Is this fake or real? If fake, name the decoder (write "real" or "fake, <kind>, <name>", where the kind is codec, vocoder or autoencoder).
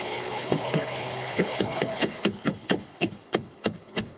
fake, codec, HILCodec